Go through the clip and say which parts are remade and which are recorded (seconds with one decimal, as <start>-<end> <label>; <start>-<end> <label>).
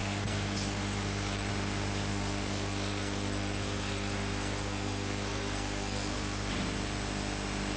0.0-1.5 remade; 1.5-2.1 recorded; 2.1-6.5 remade; 6.5-7.8 recorded